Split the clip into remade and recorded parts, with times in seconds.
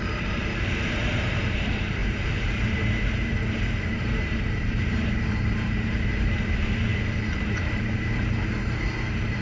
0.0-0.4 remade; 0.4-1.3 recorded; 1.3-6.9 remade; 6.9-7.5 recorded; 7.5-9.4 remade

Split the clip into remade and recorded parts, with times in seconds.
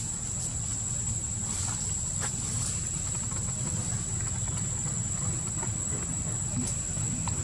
0.0-7.4 recorded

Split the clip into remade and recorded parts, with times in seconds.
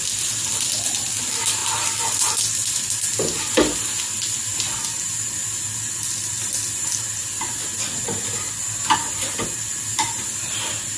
0.0-11.0 recorded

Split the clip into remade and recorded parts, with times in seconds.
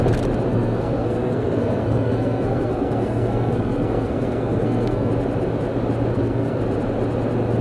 0.0-0.5 recorded; 0.5-5.1 remade; 5.1-6.1 recorded; 6.1-6.6 remade; 6.6-7.6 recorded